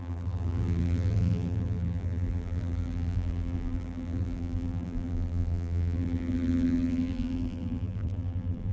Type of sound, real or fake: fake